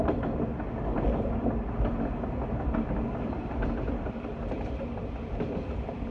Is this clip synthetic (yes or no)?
no